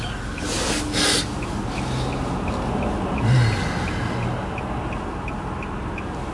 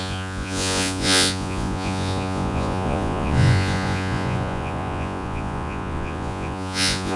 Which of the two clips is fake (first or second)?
second